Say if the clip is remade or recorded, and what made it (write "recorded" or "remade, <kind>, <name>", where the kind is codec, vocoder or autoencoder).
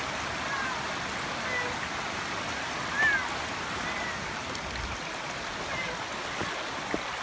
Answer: recorded